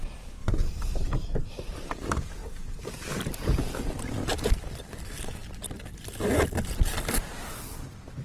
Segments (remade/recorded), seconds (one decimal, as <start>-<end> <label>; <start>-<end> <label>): 0.0-0.4 recorded; 0.4-2.0 remade; 2.0-2.4 recorded; 2.4-4.0 remade; 4.0-8.2 recorded